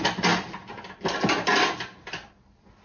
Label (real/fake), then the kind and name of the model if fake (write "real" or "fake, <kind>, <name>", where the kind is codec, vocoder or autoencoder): real